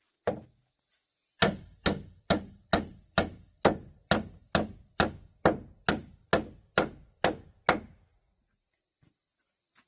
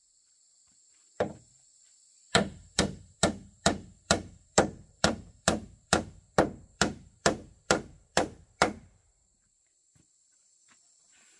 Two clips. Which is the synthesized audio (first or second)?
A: second